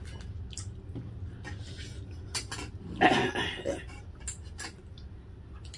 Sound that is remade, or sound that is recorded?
recorded